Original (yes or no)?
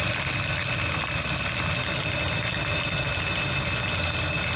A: yes